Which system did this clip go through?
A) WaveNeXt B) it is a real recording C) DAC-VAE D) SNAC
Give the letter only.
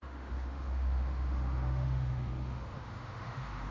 C